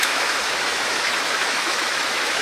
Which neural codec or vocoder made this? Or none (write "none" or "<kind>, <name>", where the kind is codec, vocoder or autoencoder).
autoencoder, DAC-VAE